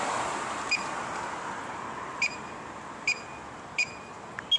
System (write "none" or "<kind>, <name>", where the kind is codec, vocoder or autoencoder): none